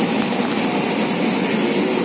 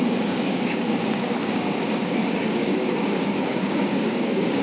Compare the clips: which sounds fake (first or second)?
second